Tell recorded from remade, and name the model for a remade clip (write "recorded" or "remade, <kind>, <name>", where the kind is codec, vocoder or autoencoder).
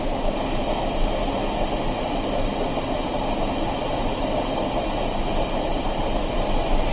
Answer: recorded